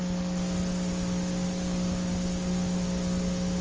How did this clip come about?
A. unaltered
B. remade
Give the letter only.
A